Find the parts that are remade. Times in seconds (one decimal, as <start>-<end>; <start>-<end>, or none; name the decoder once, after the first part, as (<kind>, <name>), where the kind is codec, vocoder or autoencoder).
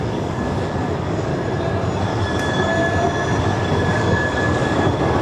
0.0-1.3 (codec, DAC); 2.0-2.7; 3.4-5.2